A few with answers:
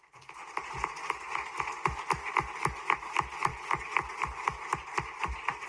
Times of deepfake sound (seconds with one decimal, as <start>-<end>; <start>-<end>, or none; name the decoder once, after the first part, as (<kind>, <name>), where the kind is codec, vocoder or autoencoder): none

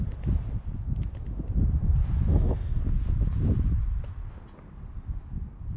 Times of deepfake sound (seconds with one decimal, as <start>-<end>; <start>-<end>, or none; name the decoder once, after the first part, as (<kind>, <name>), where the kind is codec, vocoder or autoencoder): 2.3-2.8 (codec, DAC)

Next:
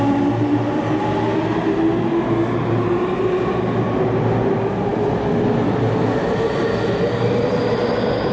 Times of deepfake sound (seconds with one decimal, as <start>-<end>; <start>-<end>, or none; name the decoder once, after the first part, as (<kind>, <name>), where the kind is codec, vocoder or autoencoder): none

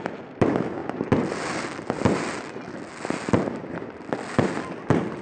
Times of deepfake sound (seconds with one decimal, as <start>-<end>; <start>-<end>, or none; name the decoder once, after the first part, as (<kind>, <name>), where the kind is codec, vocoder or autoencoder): none

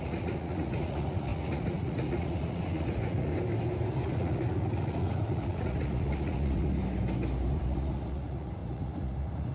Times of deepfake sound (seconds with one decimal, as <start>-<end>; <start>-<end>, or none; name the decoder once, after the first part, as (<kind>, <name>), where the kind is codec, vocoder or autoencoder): 0.0-3.3 (vocoder, Vocos); 3.9-6.8; 7.5-9.5